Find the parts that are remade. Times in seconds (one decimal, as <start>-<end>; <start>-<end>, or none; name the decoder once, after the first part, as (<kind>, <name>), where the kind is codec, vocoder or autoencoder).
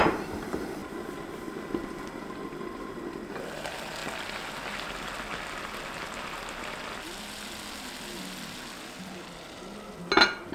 none